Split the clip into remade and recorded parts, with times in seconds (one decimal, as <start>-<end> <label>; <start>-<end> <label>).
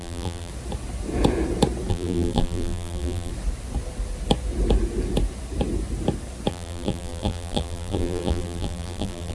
0.0-0.5 remade; 0.5-1.9 recorded; 1.9-3.3 remade; 3.3-6.5 recorded; 6.5-9.3 remade